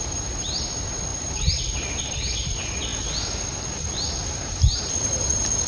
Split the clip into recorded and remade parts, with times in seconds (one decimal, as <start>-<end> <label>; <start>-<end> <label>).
0.0-2.9 remade; 2.9-4.4 recorded; 4.4-5.7 remade